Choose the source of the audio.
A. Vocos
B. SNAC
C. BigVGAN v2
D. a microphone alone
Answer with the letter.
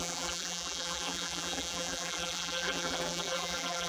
C